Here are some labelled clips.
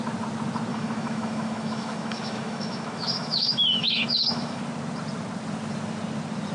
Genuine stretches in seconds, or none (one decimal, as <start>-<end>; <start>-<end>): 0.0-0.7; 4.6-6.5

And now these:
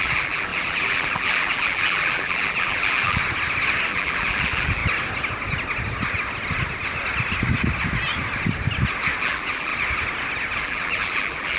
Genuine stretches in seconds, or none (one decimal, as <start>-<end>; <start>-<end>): 3.2-3.9; 4.8-9.2; 9.7-10.6

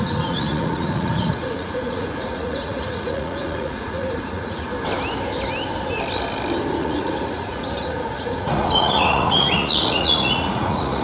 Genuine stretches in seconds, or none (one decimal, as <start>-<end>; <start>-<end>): 4.7-6.8